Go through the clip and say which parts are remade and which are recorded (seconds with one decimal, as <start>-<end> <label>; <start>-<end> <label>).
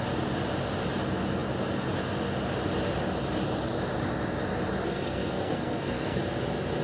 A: 0.0-4.9 recorded; 4.9-6.2 remade; 6.2-6.8 recorded